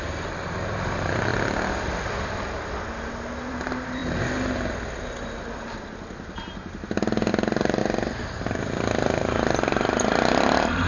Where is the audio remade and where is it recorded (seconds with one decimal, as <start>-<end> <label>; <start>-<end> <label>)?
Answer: 0.0-1.3 remade; 1.3-3.5 recorded; 3.5-4.0 remade; 4.0-7.3 recorded; 7.3-7.8 remade; 7.8-8.4 recorded; 8.4-10.9 remade